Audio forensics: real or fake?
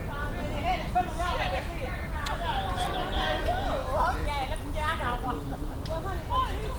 real